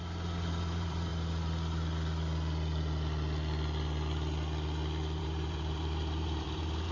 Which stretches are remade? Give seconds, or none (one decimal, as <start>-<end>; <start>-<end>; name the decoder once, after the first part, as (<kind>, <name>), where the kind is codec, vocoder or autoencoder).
0.0-1.1 (vocoder, BigVGAN v2); 5.2-6.9